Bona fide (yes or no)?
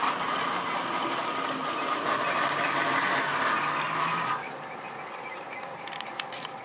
yes